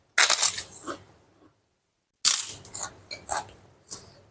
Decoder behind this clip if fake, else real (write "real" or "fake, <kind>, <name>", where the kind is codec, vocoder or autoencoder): real